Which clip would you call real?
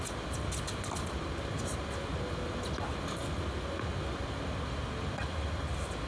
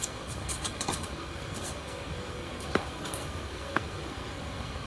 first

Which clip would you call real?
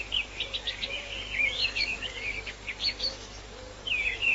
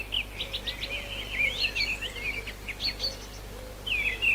second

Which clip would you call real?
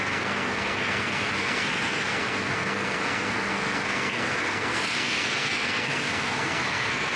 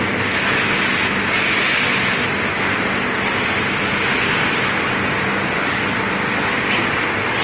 second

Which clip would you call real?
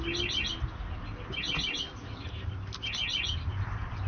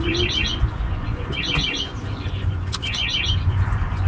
first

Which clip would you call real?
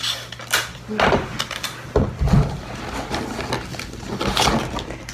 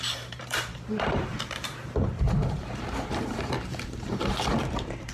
first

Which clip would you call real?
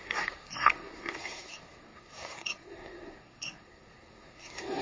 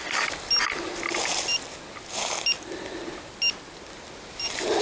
second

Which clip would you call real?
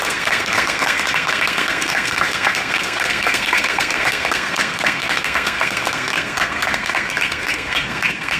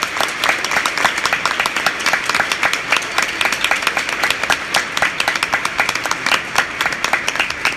second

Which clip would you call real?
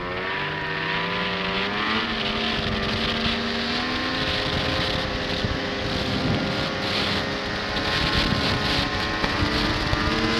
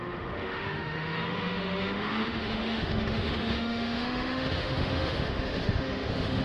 first